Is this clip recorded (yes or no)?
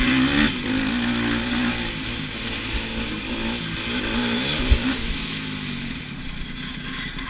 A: yes